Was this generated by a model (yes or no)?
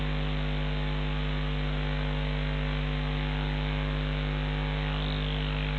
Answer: no